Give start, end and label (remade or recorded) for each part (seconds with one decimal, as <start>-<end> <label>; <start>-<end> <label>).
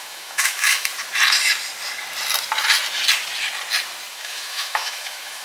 0.0-0.9 remade; 0.9-4.1 recorded; 4.1-5.4 remade